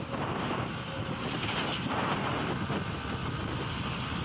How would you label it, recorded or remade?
recorded